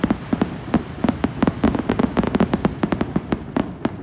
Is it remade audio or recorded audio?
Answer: remade